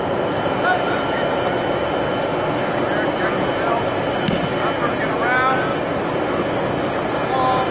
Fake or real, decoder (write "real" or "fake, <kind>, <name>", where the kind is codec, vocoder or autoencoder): real